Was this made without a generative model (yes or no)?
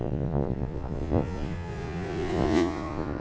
no